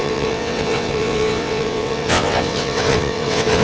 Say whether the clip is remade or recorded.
remade